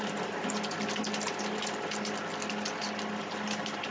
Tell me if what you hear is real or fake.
real